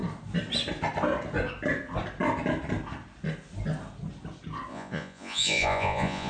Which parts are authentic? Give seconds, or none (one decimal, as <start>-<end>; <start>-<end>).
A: 0.0-4.7